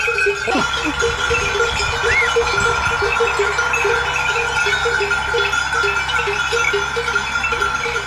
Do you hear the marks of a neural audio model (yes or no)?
no